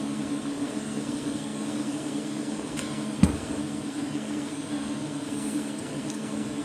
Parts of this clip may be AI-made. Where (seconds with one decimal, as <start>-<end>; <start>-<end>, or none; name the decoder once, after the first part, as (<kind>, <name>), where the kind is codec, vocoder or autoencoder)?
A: 0.0-6.6 (codec, SNAC)